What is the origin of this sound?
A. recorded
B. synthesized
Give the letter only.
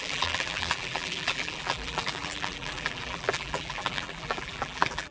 B